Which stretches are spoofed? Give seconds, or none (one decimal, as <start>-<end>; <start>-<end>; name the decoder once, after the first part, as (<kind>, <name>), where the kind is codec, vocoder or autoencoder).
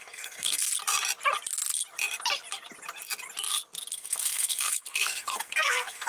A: 0.0-0.7 (codec, SNAC); 3.9-6.1